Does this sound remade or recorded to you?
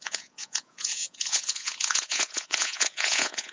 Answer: remade